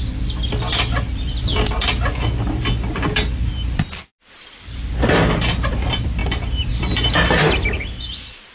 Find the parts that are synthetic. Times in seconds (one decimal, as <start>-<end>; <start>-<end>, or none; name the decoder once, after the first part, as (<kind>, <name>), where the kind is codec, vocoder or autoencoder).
none